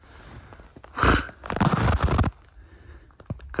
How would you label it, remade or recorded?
recorded